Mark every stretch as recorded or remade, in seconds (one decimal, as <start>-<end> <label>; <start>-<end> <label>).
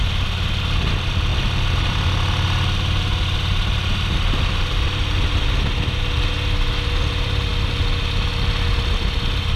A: 0.0-9.6 recorded